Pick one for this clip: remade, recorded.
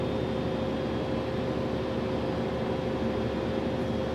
recorded